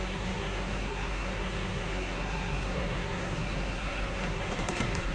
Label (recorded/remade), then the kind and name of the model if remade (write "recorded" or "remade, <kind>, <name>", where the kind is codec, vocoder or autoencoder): remade, codec, SNAC